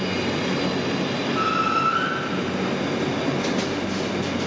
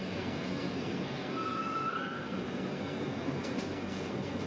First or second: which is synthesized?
second